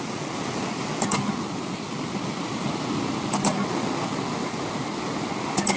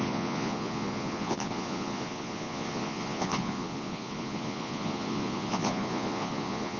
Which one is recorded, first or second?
first